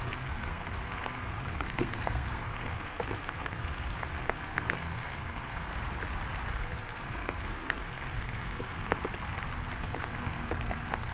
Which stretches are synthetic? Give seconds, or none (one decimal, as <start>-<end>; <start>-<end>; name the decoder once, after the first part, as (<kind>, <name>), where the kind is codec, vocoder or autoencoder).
0.0-5.7 (codec, SNAC); 6.5-9.0; 9.8-11.1